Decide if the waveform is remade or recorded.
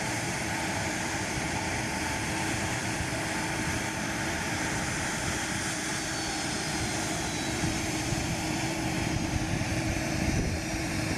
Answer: remade